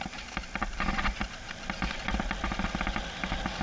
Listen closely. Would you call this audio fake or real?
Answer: real